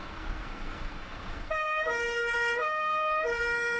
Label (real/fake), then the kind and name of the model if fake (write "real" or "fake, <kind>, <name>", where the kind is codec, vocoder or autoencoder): fake, codec, SNAC